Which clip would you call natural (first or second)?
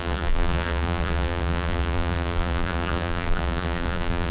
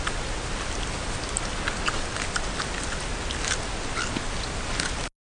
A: second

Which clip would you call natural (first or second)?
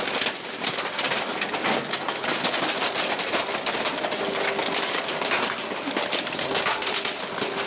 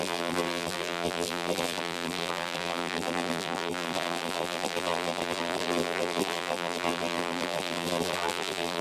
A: first